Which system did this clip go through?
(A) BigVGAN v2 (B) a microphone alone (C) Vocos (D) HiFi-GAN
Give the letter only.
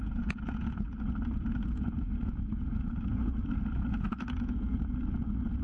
C